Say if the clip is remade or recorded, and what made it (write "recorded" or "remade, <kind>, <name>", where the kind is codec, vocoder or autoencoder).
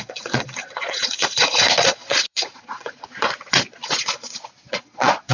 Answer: remade, vocoder, Vocos